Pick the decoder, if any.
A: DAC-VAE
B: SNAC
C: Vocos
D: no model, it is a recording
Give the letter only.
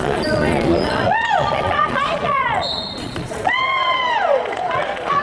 C